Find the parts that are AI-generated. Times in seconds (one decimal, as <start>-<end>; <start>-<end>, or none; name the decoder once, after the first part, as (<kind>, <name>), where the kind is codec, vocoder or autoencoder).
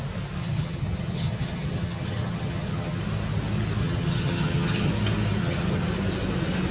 0.4-3.0 (vocoder, HiFi-GAN); 3.8-4.9; 5.4-5.9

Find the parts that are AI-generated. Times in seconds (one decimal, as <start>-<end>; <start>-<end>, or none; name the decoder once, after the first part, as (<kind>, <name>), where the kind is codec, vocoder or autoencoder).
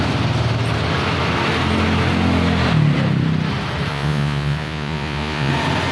3.9-5.5 (vocoder, Vocos)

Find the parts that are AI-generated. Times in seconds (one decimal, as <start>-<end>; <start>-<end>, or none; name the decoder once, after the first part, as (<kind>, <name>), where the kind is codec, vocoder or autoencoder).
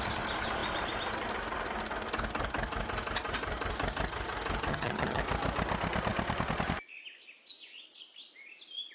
4.7-5.2 (vocoder, HiFi-GAN)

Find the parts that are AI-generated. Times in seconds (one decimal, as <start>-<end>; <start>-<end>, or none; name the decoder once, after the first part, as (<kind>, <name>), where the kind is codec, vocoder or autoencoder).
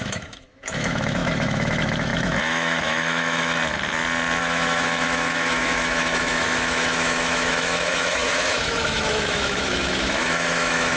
0.0-3.6 (autoencoder, DAC-VAE); 4.4-11.0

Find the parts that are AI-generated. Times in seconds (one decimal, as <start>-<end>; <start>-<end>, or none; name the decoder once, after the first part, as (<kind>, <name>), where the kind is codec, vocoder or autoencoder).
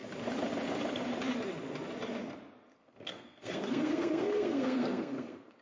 2.8-5.6 (codec, SNAC)